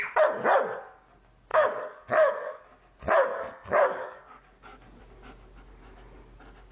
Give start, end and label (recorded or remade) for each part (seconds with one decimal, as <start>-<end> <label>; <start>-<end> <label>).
0.0-1.5 recorded; 1.5-2.6 remade; 2.6-3.3 recorded; 3.3-5.0 remade; 5.0-6.7 recorded